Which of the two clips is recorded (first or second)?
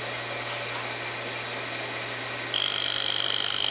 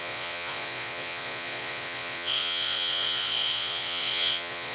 first